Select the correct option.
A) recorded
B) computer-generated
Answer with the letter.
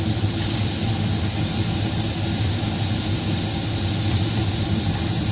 A